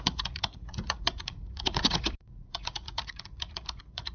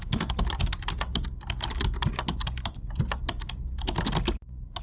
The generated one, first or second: first